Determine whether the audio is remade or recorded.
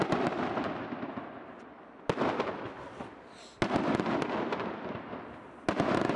recorded